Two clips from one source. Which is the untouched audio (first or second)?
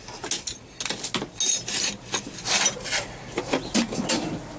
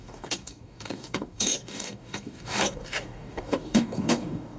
first